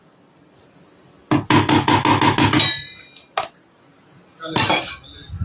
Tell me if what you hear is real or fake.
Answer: real